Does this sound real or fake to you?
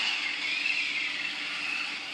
real